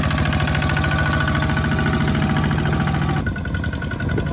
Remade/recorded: recorded